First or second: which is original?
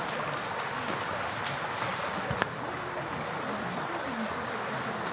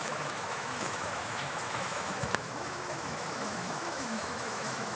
first